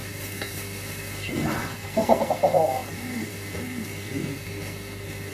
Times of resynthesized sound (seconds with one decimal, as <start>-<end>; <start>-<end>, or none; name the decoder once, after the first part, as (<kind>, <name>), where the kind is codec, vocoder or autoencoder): 0.0-5.3 (codec, SNAC)